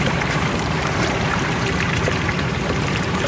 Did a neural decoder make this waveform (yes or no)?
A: yes